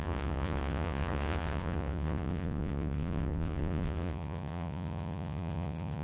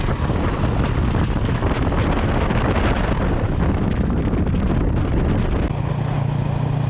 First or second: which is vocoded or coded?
first